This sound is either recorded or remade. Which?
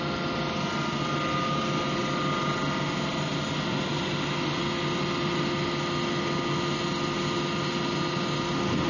recorded